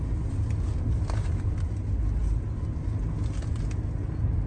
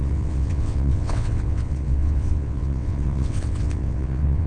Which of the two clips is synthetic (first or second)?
second